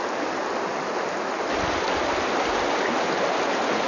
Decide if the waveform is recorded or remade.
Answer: recorded